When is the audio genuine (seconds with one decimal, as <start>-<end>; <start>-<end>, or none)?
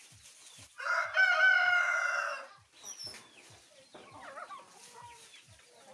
0.0-5.9